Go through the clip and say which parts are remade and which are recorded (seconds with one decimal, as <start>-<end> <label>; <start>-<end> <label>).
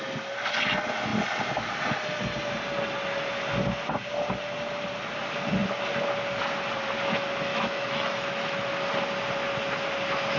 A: 0.0-7.5 recorded; 7.5-8.7 remade; 8.7-10.4 recorded